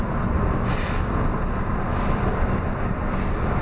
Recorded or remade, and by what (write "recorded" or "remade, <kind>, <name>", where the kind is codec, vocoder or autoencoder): recorded